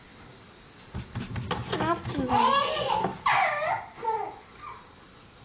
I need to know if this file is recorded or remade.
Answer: recorded